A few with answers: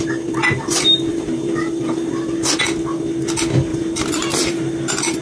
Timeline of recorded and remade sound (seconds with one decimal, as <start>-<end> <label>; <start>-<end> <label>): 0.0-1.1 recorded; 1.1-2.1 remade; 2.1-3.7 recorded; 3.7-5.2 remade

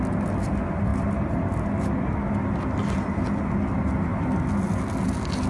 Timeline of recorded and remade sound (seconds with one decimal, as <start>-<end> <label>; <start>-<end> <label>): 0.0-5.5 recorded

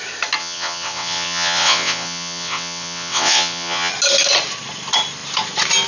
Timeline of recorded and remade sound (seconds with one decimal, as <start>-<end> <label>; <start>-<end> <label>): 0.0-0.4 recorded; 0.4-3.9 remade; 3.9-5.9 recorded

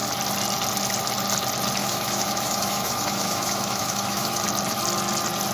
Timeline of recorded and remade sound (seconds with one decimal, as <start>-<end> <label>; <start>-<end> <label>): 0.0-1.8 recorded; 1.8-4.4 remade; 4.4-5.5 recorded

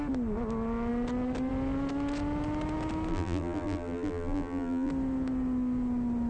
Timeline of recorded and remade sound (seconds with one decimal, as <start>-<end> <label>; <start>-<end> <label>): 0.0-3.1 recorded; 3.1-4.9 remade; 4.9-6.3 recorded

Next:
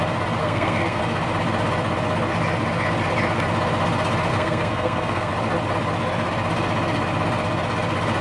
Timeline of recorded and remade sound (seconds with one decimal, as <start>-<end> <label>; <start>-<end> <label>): 0.0-0.4 recorded; 0.4-1.0 remade; 1.0-4.3 recorded; 4.3-5.3 remade; 5.3-8.2 recorded